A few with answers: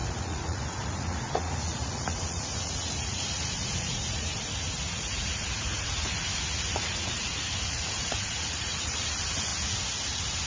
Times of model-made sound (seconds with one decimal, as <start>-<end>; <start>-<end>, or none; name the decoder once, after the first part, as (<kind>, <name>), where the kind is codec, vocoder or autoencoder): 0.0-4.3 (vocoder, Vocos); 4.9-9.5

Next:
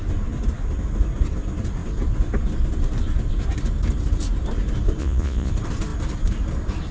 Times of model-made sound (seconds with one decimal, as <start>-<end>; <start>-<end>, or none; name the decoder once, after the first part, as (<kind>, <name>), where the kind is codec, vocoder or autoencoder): 5.0-5.5 (vocoder, Vocos)

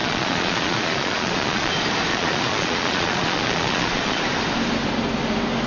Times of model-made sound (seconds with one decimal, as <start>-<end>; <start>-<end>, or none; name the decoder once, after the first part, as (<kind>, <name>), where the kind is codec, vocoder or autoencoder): 0.0-1.7 (vocoder, Vocos); 2.1-4.2

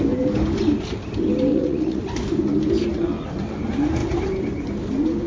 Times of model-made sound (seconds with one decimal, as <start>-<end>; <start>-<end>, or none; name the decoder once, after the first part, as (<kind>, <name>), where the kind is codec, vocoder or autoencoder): 1.5-2.0 (vocoder, Vocos)